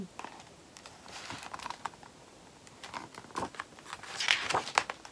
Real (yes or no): yes